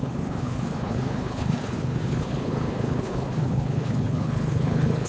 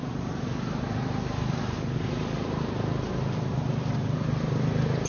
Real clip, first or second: second